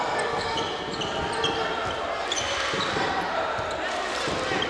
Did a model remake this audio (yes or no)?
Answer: no